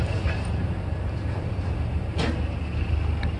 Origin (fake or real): real